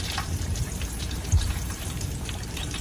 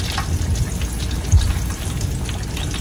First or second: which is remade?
first